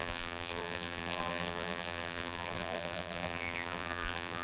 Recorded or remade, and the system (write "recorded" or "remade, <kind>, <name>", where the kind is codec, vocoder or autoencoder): remade, vocoder, BigVGAN v2